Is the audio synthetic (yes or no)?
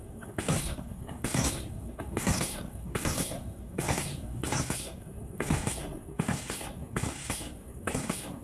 yes